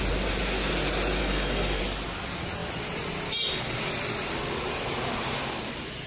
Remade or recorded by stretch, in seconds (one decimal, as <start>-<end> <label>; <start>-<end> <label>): 0.0-1.2 recorded; 1.2-1.8 remade; 1.8-6.1 recorded